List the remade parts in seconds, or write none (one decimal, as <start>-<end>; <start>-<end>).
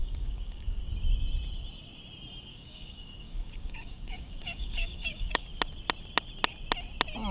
0.0-0.8; 2.5-5.5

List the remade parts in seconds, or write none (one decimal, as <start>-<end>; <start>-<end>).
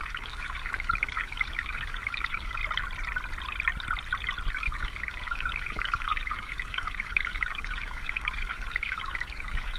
0.0-2.6; 4.5-9.8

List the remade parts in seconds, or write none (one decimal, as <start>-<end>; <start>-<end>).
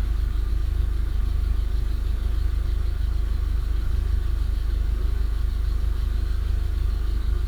0.0-7.5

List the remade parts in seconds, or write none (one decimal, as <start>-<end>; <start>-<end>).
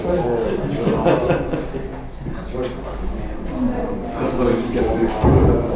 4.5-5.8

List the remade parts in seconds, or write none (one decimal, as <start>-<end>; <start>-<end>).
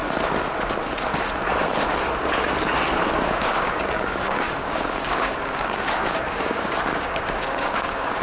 3.2-8.2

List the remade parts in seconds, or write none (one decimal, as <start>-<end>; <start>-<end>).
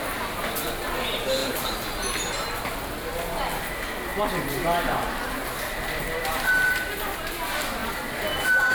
none